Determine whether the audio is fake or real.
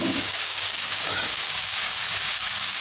fake